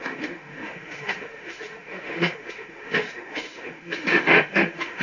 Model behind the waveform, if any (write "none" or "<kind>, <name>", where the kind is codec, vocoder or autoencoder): autoencoder, DAC-VAE